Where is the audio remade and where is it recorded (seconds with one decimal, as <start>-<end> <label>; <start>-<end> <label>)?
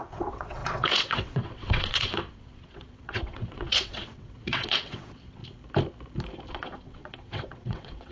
0.0-5.4 remade; 5.4-6.5 recorded; 6.5-8.1 remade